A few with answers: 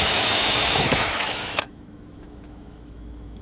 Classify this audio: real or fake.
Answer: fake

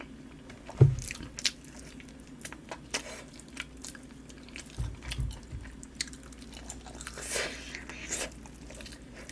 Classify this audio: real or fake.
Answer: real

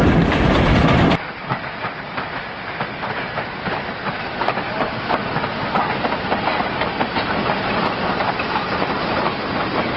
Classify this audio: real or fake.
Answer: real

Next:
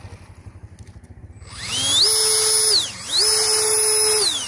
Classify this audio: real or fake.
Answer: real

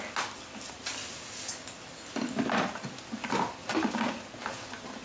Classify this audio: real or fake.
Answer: real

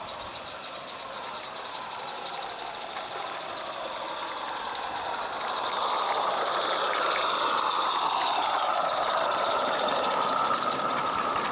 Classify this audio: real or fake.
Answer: real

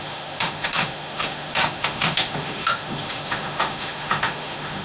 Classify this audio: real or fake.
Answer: fake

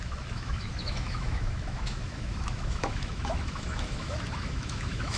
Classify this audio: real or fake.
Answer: fake